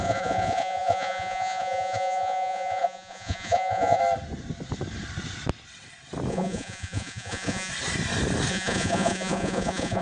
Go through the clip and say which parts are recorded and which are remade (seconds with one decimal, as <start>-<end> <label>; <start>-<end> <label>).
0.0-4.0 remade; 4.0-6.3 recorded; 6.3-7.7 remade; 7.7-8.5 recorded; 8.5-10.0 remade